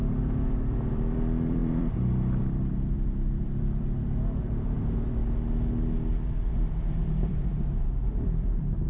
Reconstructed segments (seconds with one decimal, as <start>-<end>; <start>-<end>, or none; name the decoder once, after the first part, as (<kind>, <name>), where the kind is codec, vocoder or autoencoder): 0.0-5.2 (vocoder, BigVGAN v2); 6.5-7.5; 8.0-8.9